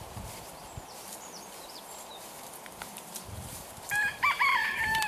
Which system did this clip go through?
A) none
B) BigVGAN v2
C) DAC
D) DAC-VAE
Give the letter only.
B